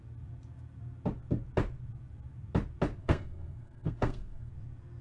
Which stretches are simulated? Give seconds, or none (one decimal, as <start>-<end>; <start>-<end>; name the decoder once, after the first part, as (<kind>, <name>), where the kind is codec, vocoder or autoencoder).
3.0-4.5 (codec, SNAC)